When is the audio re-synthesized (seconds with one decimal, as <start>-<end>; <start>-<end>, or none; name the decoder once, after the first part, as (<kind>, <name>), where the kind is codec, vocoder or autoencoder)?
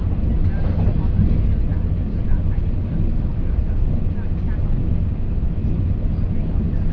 none